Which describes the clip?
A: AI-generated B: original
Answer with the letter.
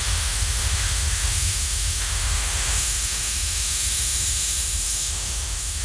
A